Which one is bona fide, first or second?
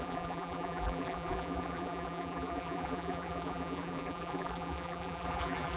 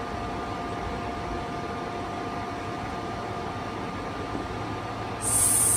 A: second